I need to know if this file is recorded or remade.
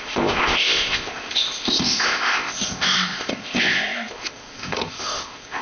remade